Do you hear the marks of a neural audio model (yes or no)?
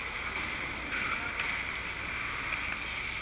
no